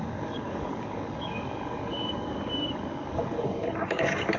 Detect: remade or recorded remade